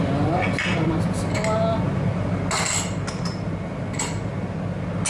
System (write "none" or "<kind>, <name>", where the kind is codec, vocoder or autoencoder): none